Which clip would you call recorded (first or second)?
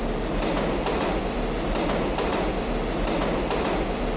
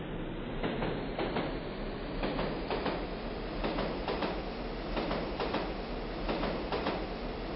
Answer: first